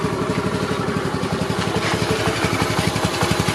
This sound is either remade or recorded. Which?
recorded